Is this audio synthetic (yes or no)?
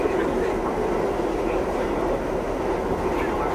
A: no